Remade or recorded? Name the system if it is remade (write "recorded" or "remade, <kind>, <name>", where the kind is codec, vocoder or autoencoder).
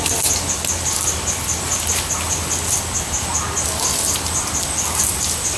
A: recorded